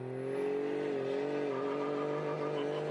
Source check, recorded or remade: recorded